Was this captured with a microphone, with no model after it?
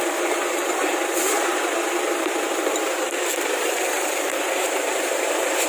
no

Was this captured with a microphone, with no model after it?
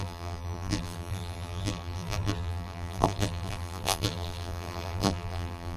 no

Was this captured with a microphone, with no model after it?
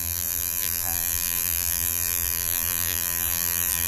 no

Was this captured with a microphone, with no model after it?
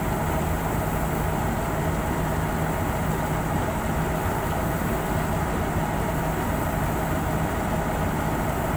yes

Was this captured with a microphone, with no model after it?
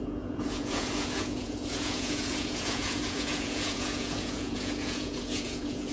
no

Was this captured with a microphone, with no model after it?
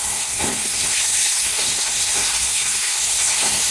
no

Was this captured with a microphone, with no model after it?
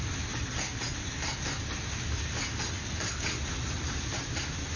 yes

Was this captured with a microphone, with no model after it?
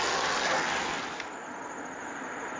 yes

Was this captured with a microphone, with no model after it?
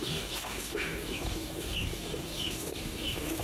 no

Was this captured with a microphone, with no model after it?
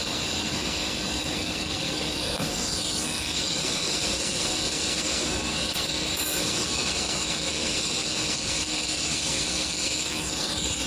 no